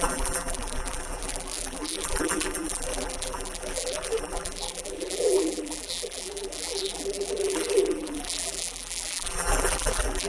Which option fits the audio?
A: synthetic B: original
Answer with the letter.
A